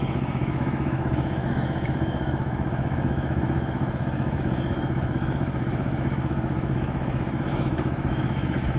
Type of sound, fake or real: fake